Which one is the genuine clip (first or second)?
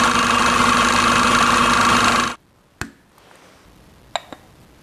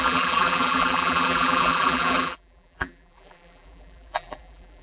first